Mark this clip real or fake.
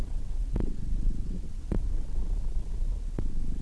fake